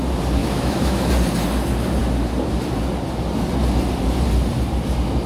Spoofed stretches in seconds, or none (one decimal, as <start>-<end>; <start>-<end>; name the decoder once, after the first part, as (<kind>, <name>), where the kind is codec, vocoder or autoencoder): 0.4-1.1 (autoencoder, DAC-VAE)

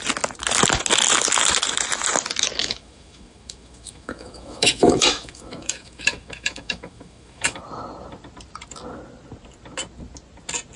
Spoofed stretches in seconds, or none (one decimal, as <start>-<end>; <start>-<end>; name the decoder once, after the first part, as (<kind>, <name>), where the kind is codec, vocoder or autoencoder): 2.6-7.6 (autoencoder, DAC-VAE)

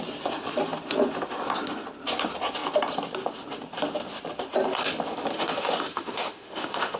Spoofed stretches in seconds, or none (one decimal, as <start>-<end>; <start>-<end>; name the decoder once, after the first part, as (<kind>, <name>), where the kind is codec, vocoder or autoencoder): 5.3-7.0 (autoencoder, DAC-VAE)

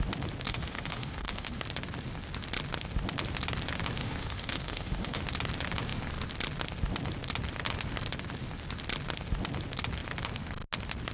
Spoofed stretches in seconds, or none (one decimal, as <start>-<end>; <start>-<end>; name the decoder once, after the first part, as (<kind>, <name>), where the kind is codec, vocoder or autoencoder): 0.5-1.6 (autoencoder, DAC-VAE); 4.0-5.2

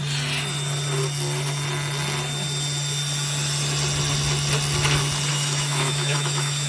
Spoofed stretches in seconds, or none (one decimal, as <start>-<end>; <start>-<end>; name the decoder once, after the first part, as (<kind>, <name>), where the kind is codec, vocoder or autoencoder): 5.3-6.7 (autoencoder, DAC-VAE)

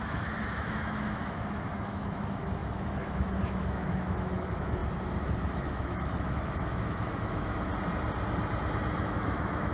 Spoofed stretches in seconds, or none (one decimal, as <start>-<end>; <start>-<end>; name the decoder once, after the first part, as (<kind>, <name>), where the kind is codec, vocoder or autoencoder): 0.0-4.8 (autoencoder, DAC-VAE); 5.4-7.7; 9.0-9.7

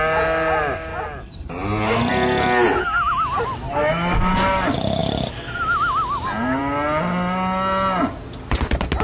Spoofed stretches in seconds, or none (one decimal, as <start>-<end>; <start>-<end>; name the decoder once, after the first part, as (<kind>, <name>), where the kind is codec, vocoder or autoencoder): 3.8-4.3 (autoencoder, DAC-VAE)

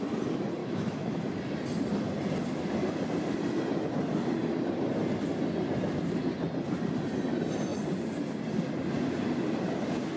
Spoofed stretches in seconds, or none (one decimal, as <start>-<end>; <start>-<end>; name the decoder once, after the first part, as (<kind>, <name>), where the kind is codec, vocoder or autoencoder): 0.6-1.2 (autoencoder, DAC-VAE)